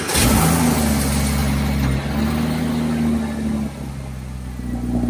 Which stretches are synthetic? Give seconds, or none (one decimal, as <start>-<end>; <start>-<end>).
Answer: none